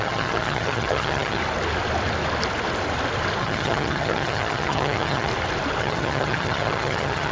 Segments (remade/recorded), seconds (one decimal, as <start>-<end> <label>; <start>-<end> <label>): 0.0-1.4 remade; 1.4-3.4 recorded; 3.4-5.3 remade; 5.3-5.8 recorded; 5.8-7.3 remade